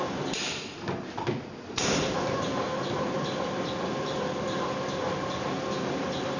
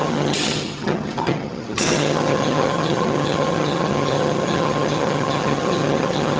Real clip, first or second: first